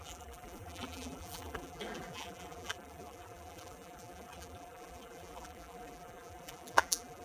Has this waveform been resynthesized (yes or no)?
yes